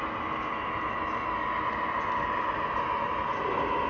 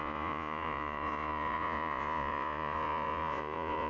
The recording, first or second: first